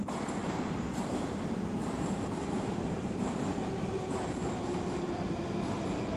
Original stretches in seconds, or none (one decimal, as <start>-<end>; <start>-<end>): 0.0-0.4; 1.3-1.8; 4.6-6.2